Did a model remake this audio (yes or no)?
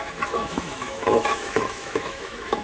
yes